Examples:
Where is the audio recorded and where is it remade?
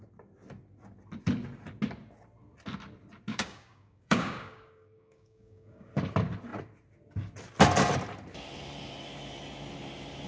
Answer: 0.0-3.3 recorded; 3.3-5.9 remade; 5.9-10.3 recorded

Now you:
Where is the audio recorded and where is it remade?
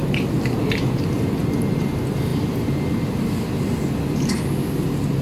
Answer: 0.0-5.2 recorded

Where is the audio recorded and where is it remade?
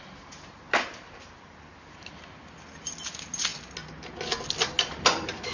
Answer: 0.0-5.5 recorded